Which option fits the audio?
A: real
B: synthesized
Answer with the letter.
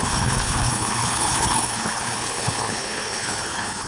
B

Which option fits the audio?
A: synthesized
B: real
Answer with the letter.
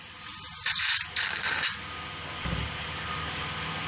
B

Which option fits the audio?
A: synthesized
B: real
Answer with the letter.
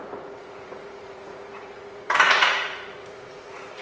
A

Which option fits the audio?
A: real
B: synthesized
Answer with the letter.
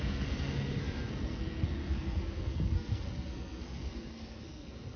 B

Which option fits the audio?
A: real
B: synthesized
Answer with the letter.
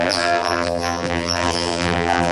B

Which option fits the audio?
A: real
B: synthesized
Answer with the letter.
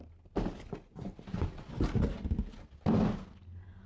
A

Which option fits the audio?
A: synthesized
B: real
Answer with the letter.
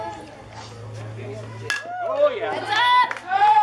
B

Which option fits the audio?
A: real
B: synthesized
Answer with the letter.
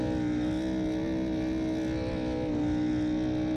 A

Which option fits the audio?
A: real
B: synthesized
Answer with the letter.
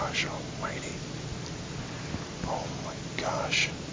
A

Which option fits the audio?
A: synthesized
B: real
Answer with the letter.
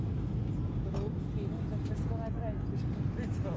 B